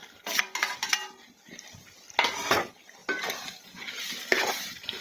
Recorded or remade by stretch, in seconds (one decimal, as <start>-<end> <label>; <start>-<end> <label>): 0.0-3.0 recorded; 3.0-3.7 remade; 3.7-4.3 recorded; 4.3-5.0 remade